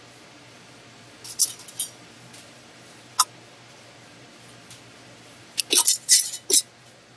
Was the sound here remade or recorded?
recorded